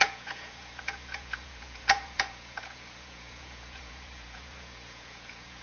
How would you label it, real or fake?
fake